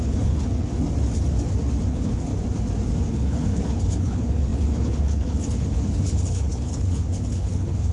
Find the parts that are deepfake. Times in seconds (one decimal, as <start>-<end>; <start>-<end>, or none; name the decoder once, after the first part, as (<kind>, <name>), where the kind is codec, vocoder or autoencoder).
0.0-0.7 (codec, HILCodec); 1.9-2.3; 3.1-7.9